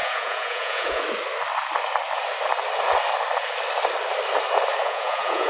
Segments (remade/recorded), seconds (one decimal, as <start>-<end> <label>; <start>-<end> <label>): 0.0-1.0 remade; 1.0-4.8 recorded; 4.8-5.5 remade